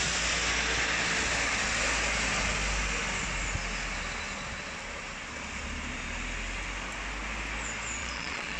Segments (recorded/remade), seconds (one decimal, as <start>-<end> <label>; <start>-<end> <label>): 0.0-8.0 recorded; 8.0-8.6 remade